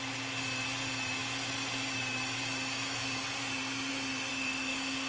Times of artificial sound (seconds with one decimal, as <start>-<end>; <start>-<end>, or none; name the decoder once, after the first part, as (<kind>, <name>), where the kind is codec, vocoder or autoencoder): 4.3-5.1 (autoencoder, DAC-VAE)